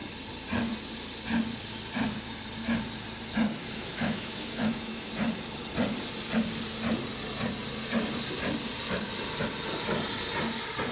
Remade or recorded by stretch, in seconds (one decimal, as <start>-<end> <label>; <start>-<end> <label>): 0.0-3.6 recorded; 3.6-5.1 remade; 5.1-10.9 recorded